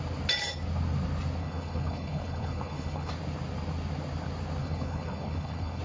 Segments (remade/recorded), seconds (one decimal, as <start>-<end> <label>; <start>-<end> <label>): 0.0-1.4 recorded; 1.4-3.1 remade; 3.1-4.6 recorded; 4.6-5.8 remade